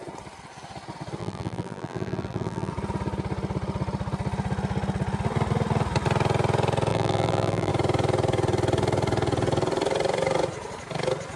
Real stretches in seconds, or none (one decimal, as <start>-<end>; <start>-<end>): 0.0-1.2; 2.7-6.9; 7.7-11.4